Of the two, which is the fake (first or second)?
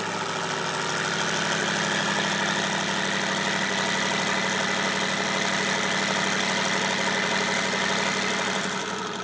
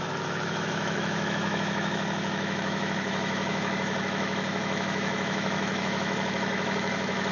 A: second